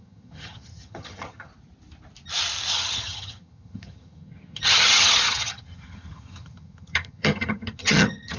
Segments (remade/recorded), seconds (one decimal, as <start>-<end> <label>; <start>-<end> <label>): 0.0-1.5 remade; 1.5-2.7 recorded; 2.7-8.4 remade